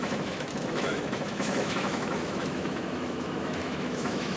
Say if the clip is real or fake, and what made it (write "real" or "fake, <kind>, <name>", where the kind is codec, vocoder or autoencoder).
fake, autoencoder, DAC-VAE